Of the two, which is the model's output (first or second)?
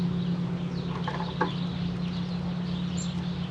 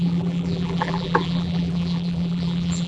second